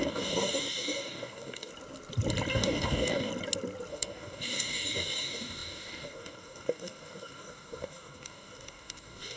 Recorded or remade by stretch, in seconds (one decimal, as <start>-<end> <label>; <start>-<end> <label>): 0.0-1.7 remade; 1.7-2.5 recorded; 2.5-3.3 remade; 3.3-3.9 recorded; 3.9-9.4 remade